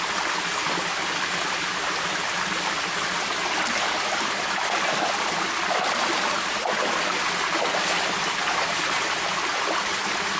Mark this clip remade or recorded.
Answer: recorded